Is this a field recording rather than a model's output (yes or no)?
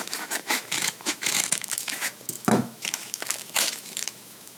no